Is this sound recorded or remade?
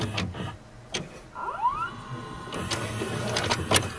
recorded